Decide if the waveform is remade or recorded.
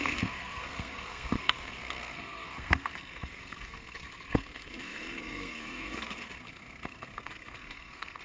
remade